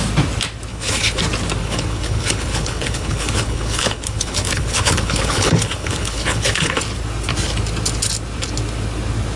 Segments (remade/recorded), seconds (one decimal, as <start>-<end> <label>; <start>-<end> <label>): 0.0-0.7 recorded; 0.7-1.2 remade; 1.2-1.6 recorded; 1.6-6.8 remade; 6.8-9.4 recorded